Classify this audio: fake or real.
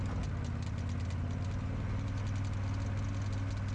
real